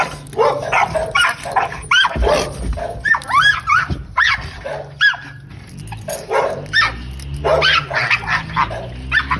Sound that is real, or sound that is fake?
real